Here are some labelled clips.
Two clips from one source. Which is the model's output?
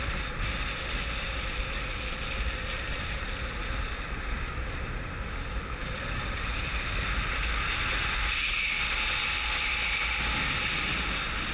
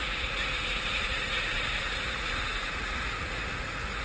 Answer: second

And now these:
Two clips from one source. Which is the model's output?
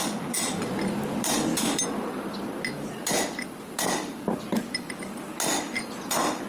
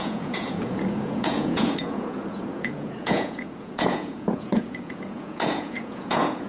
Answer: second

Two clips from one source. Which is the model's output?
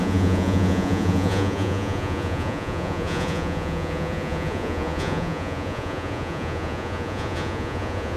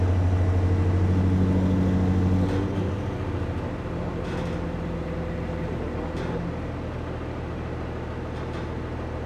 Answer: first